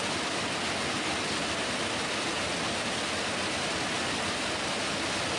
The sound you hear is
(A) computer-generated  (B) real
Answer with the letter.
B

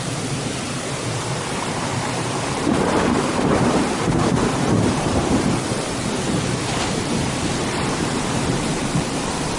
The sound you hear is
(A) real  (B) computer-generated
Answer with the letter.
B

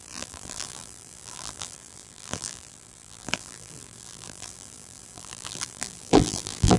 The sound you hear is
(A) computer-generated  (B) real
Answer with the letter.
A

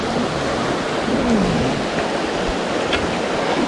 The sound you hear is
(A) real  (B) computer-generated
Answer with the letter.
A